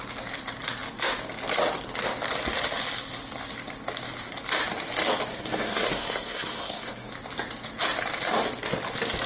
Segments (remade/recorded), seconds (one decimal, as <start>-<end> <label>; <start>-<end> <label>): 0.0-5.3 recorded; 5.3-7.1 remade; 7.1-9.3 recorded